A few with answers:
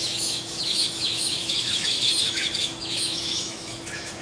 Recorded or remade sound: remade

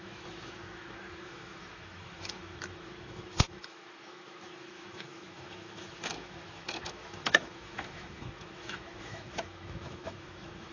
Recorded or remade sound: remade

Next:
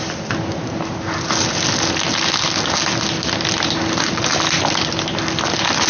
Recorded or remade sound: recorded